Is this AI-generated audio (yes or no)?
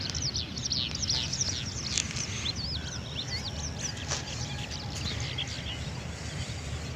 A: no